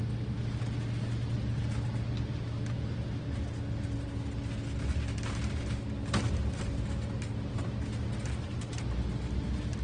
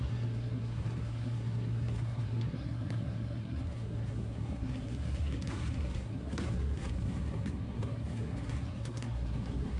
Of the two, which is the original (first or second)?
first